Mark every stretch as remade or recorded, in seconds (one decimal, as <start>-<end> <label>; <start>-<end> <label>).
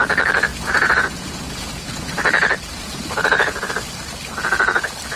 0.0-0.5 recorded; 0.5-2.1 remade; 2.1-2.8 recorded; 2.8-3.7 remade; 3.7-5.2 recorded